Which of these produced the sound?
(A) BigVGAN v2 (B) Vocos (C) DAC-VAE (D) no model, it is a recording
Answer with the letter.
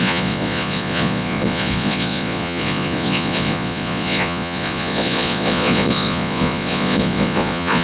B